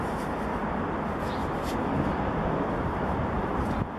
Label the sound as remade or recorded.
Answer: recorded